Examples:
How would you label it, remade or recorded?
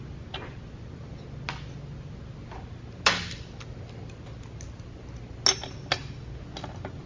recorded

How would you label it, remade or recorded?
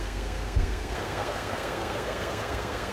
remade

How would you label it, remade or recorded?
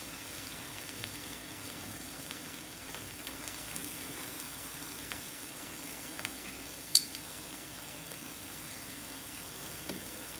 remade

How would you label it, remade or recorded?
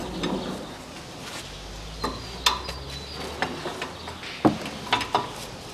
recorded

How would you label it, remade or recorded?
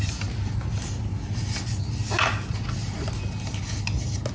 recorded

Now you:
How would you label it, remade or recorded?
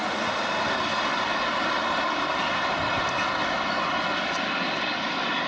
recorded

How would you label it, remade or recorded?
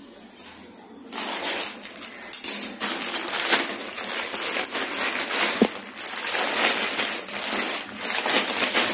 recorded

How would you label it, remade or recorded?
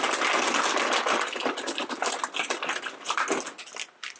recorded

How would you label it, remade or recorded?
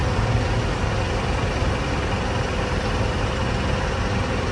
recorded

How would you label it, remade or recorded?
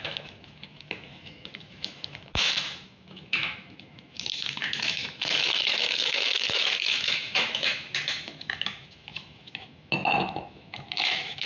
remade